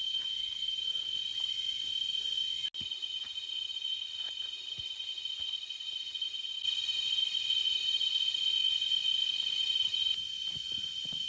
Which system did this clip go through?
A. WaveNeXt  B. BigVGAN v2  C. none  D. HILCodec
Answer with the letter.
C